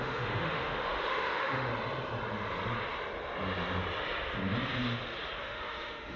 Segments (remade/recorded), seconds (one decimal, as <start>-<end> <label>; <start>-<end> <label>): 0.0-1.7 remade; 1.7-5.4 recorded; 5.4-6.2 remade